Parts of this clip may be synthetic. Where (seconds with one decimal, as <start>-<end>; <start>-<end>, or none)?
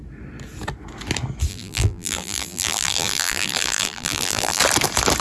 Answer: 1.5-4.6